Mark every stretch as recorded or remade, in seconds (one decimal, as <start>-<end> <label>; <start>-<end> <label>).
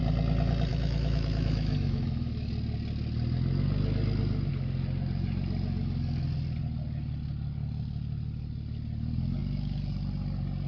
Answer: 0.0-0.7 recorded; 0.7-2.5 remade; 2.5-10.7 recorded